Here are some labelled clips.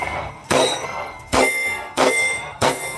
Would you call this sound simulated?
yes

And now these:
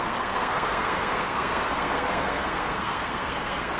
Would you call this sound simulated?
yes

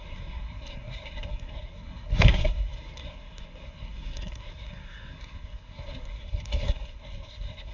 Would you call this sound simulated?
yes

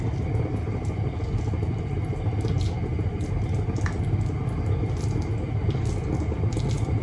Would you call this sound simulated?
no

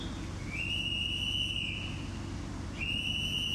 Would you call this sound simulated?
no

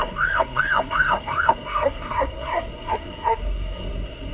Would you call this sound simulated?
yes